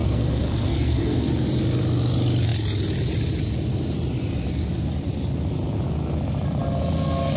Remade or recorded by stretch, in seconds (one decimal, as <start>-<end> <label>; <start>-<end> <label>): 0.0-1.3 remade; 1.3-7.4 recorded